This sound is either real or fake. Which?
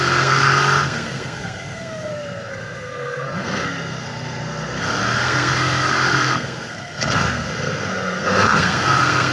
fake